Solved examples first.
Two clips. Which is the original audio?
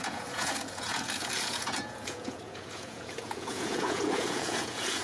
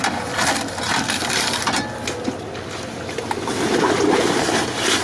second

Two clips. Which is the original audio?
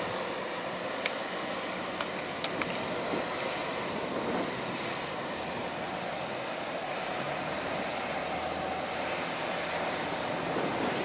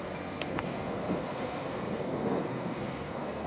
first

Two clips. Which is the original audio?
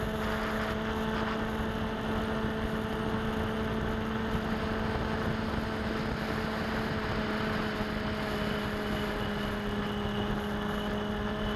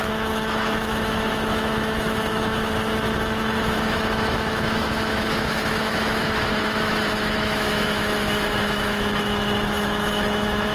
first